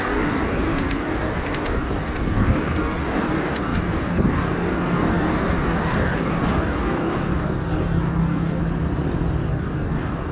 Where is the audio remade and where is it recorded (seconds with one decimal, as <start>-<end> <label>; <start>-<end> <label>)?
0.0-8.6 remade; 8.6-9.5 recorded; 9.5-10.3 remade